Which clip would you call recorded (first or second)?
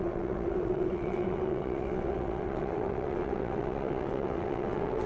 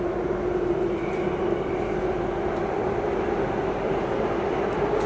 second